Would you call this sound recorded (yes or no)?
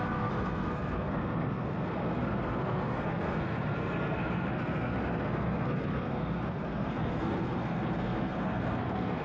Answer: no